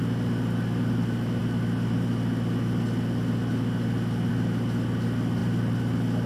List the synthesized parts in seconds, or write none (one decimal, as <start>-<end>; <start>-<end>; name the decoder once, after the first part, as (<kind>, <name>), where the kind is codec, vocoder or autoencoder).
5.4-6.3 (vocoder, BigVGAN v2)